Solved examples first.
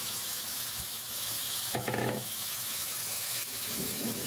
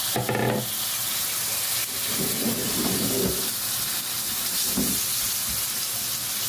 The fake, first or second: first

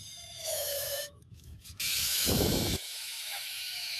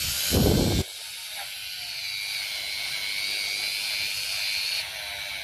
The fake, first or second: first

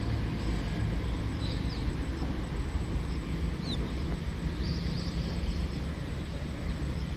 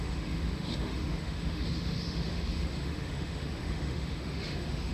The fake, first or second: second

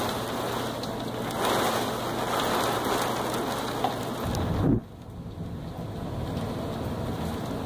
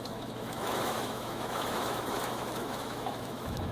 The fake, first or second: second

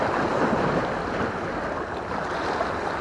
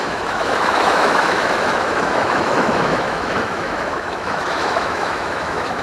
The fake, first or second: second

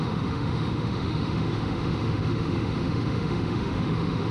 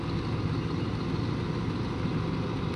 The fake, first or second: first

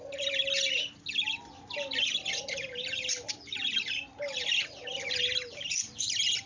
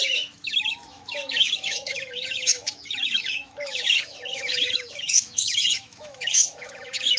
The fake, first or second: second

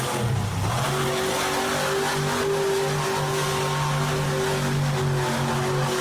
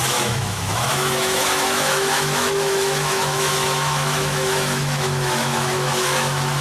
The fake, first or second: second